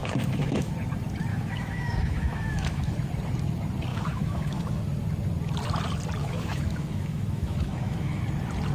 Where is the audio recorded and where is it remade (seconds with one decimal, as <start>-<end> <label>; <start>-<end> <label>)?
0.0-0.7 remade; 0.7-1.3 recorded; 1.3-2.9 remade; 2.9-3.9 recorded; 3.9-4.8 remade; 4.8-6.2 recorded; 6.2-8.2 remade; 8.2-8.7 recorded